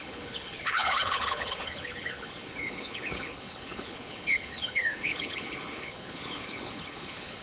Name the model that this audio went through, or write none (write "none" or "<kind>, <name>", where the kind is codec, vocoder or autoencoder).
codec, HILCodec